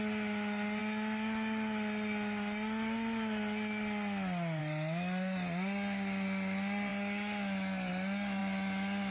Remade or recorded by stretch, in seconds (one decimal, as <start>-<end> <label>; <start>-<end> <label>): 0.0-9.1 recorded